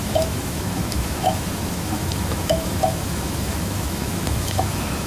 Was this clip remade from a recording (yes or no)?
yes